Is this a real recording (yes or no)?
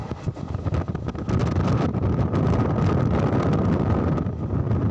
yes